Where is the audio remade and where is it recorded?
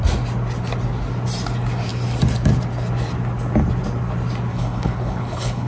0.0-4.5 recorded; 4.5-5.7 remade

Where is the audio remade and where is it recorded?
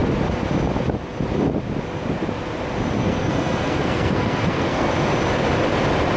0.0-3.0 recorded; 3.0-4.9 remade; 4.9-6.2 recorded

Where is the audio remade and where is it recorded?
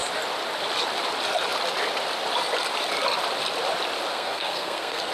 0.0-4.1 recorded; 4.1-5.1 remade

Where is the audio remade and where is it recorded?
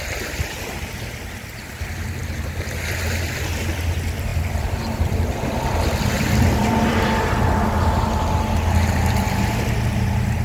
0.0-10.4 recorded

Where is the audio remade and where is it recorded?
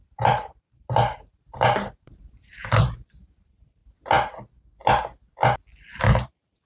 0.0-3.8 remade; 3.8-5.9 recorded; 5.9-6.7 remade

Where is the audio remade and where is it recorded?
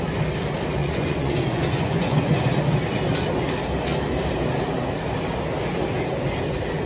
0.0-0.8 recorded; 0.8-2.5 remade; 2.5-6.9 recorded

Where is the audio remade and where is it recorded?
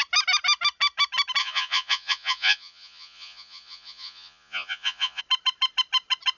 0.0-1.4 recorded; 1.4-5.2 remade; 5.2-6.4 recorded